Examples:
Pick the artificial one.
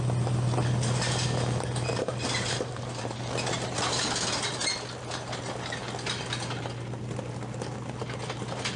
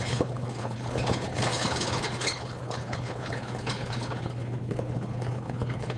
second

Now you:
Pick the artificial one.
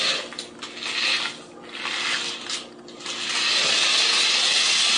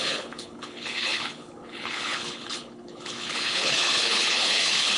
second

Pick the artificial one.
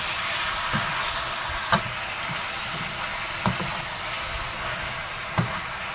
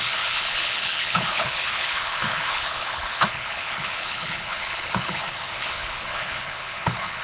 second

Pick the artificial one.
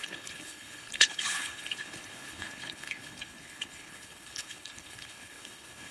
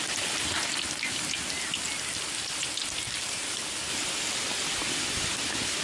first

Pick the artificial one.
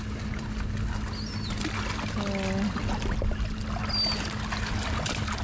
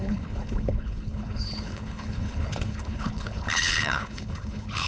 second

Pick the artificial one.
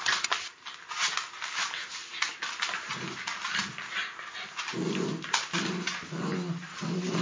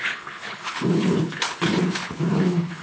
second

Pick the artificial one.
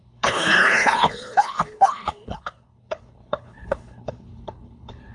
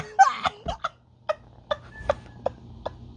first